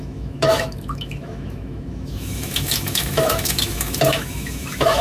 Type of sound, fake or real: fake